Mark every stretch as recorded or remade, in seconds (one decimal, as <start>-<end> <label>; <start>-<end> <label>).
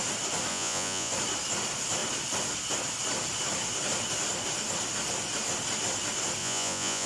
0.0-0.5 recorded; 0.5-1.1 remade; 1.1-6.4 recorded; 6.4-7.1 remade